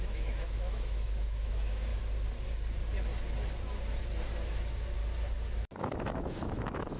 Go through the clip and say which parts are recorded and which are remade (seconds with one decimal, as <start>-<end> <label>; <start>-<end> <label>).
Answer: 0.0-1.9 remade; 1.9-4.5 recorded; 4.5-5.0 remade; 5.0-5.8 recorded; 5.8-7.0 remade